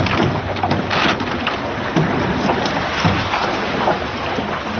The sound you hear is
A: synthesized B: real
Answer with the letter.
B